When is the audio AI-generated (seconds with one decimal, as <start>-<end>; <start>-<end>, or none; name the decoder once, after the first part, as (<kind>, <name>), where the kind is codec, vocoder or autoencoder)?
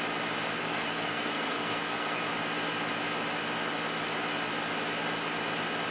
0.6-2.3 (codec, SNAC)